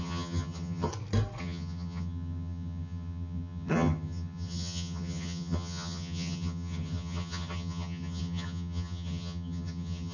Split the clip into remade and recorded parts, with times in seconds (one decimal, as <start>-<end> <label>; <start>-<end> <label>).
0.0-0.9 remade; 0.9-1.4 recorded; 1.4-10.1 remade